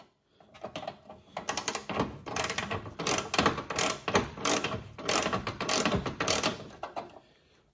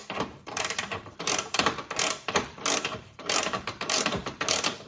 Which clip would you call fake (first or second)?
second